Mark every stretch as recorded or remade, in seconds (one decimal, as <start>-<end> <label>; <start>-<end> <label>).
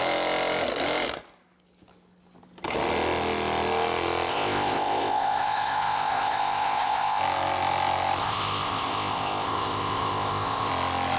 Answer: 0.0-4.3 recorded; 4.3-7.2 remade; 7.2-8.2 recorded; 8.2-10.7 remade; 10.7-11.2 recorded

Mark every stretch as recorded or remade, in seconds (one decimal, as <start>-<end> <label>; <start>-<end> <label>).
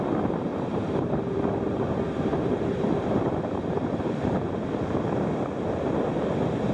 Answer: 0.0-0.5 recorded; 0.5-4.5 remade; 4.5-6.7 recorded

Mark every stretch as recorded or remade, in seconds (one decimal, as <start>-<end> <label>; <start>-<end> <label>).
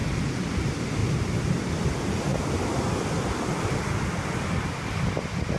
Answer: 0.0-5.6 recorded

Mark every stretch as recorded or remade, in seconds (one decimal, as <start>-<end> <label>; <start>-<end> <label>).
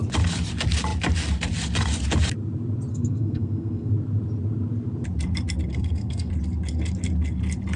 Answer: 0.0-2.9 recorded; 2.9-3.9 remade; 3.9-5.7 recorded; 5.7-6.3 remade; 6.3-7.8 recorded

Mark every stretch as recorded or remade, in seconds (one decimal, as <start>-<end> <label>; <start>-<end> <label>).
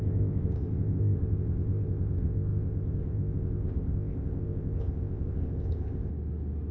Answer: 0.0-6.1 remade; 6.1-6.7 recorded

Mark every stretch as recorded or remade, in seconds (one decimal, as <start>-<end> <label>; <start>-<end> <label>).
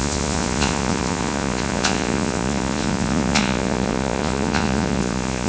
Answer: 0.0-5.5 remade